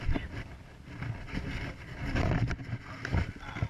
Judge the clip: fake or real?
real